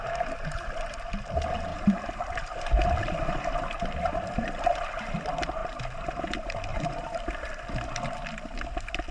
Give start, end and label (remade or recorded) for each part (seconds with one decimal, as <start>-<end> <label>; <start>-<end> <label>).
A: 0.0-1.7 recorded; 1.7-2.2 remade; 2.2-6.7 recorded; 6.7-7.2 remade; 7.2-9.1 recorded